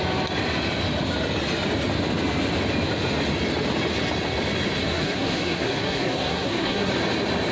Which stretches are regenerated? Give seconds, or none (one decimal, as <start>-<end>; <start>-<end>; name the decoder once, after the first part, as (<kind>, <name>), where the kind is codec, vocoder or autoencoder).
4.8-6.9 (codec, SNAC)